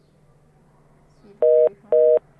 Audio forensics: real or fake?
real